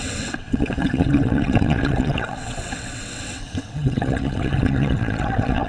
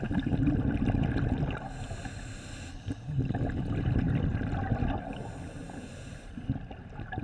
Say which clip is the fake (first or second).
first